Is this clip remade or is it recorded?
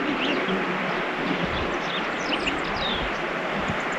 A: remade